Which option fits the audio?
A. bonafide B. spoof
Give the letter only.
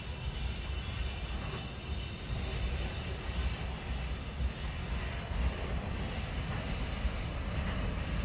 A